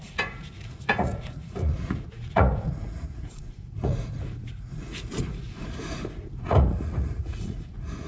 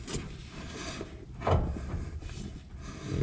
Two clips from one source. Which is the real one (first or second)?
second